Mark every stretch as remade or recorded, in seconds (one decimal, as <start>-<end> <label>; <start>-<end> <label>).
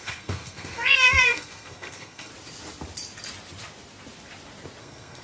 0.0-2.3 remade; 2.3-4.8 recorded; 4.8-5.2 remade